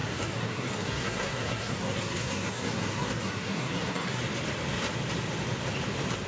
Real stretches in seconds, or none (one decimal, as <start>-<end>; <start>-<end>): 4.2-6.3

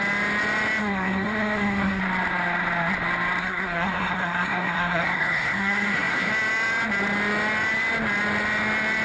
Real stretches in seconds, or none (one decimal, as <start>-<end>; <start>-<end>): 0.0-0.8; 2.0-3.4; 6.3-9.0

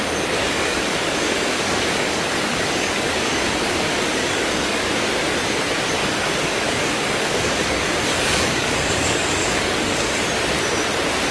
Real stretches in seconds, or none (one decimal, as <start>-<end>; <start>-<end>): 0.0-0.4; 4.9-6.0; 10.2-11.3

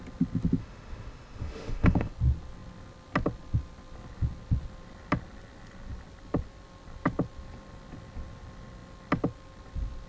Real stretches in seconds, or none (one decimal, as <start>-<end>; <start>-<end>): 0.0-0.6; 2.1-10.1